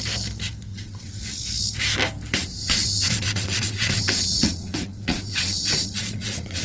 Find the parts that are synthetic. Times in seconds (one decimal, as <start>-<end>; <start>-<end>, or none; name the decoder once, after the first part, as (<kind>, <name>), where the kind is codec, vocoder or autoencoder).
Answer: 0.7-1.2 (vocoder, WaveNeXt); 2.4-6.6